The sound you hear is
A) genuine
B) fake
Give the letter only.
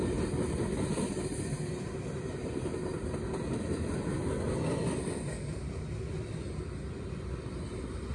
A